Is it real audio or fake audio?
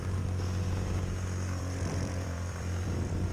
fake